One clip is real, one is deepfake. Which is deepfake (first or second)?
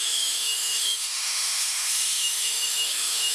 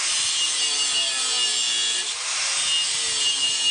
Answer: first